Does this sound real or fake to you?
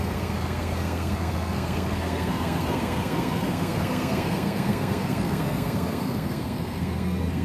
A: fake